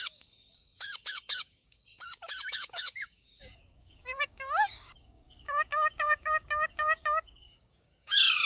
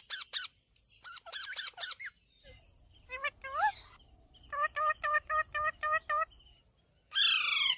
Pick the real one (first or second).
second